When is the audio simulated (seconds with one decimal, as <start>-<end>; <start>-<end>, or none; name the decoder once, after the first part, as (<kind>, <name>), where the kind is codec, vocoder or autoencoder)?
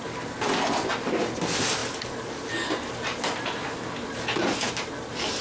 none